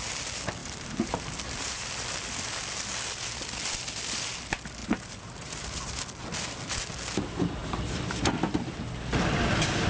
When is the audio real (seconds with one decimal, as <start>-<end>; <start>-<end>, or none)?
0.0-0.6; 1.9-4.8; 6.0-7.6; 8.9-9.9